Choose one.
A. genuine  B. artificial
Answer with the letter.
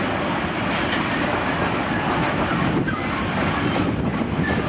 A